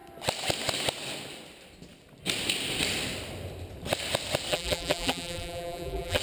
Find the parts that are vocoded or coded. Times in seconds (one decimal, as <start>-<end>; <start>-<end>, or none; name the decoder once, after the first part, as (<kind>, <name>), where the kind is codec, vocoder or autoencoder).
4.5-6.2 (vocoder, BigVGAN v2)